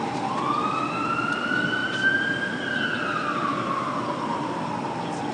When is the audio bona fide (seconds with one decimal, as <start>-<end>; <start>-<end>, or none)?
0.0-1.8; 2.4-3.5; 4.7-5.3

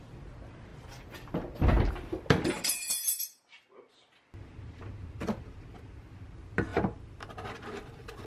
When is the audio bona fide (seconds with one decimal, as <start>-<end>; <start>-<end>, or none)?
0.0-6.7

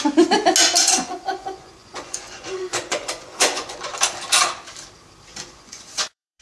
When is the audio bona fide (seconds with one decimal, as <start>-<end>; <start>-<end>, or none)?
0.0-0.8; 3.9-5.3